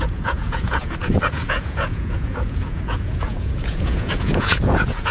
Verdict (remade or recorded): remade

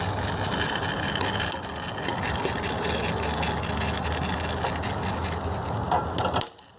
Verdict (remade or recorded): recorded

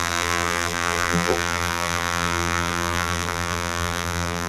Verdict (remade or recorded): remade